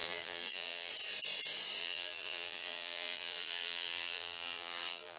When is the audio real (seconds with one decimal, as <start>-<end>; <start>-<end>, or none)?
0.9-1.8